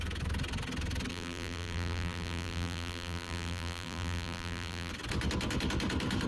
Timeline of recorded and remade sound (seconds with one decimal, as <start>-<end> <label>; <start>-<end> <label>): 0.0-1.1 recorded; 1.1-4.9 remade; 4.9-6.3 recorded